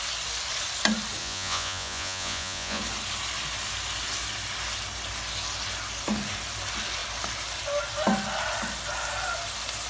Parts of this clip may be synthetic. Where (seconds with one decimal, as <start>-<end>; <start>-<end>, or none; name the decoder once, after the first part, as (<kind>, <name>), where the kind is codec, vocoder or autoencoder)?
1.2-2.8 (vocoder, Vocos)

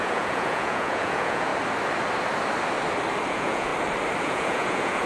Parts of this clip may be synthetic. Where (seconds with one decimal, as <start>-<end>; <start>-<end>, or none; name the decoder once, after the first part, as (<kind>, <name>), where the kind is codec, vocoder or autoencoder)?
0.0-1.5 (vocoder, Vocos); 3.3-3.7; 4.2-5.1

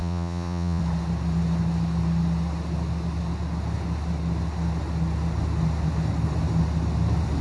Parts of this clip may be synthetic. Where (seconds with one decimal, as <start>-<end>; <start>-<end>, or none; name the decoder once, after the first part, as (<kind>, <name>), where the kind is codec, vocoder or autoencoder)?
0.0-0.8 (vocoder, Vocos)

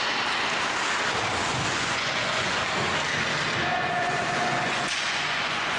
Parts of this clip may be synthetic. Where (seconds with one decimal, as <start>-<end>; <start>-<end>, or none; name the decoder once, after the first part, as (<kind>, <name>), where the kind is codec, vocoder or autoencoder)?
1.4-2.6 (vocoder, Vocos); 3.7-5.8

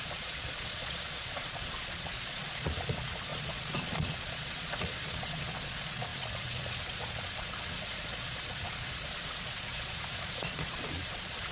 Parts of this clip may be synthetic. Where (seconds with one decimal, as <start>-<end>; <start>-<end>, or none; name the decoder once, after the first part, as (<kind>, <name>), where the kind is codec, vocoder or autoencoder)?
0.0-11.5 (vocoder, Vocos)

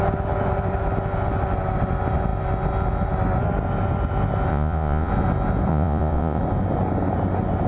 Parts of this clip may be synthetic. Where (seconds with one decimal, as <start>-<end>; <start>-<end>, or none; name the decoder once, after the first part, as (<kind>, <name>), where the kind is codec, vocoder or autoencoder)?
4.5-5.1 (vocoder, Vocos); 5.7-6.4